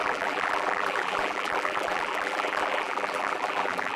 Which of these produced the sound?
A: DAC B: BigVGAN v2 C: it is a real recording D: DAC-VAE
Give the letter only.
B